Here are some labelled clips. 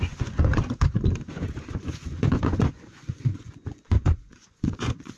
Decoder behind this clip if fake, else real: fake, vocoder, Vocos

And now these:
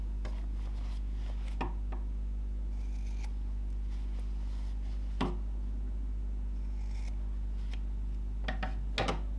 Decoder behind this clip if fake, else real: real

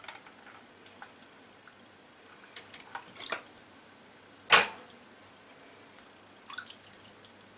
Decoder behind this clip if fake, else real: real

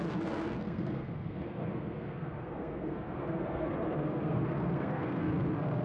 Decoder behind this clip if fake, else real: fake, codec, SNAC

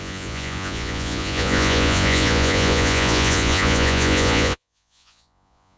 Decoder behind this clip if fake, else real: fake, vocoder, Vocos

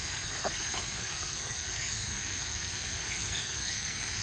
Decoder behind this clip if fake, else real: fake, codec, SNAC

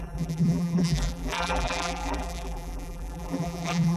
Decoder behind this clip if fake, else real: fake, vocoder, BigVGAN v2